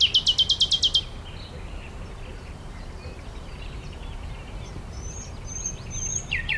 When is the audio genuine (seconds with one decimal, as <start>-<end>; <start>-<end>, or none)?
0.0-2.3; 5.3-6.6